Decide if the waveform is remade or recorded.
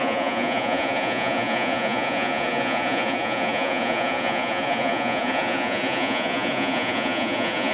remade